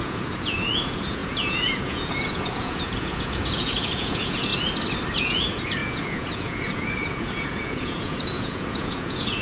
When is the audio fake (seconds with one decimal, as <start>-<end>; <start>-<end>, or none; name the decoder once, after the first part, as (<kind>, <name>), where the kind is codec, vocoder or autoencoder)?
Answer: 0.0-4.5 (vocoder, Vocos); 5.2-9.4